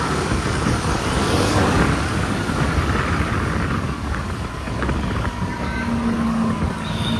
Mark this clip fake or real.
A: fake